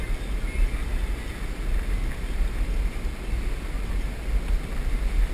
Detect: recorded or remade recorded